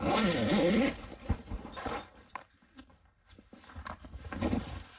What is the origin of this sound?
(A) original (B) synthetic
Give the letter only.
A